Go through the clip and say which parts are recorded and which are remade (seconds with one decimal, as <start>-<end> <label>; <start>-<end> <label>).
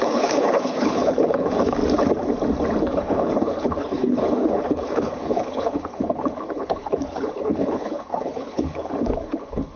0.0-1.8 remade; 1.8-2.8 recorded; 2.8-9.8 remade